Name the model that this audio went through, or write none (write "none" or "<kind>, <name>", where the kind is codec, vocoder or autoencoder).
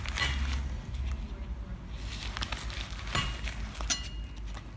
none